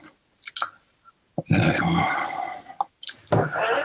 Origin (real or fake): real